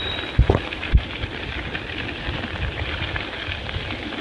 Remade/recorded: recorded